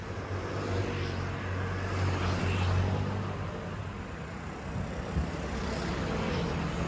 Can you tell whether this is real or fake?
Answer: real